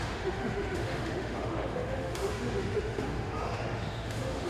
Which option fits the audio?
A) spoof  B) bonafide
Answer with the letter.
A